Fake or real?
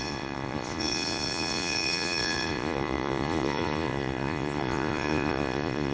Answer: fake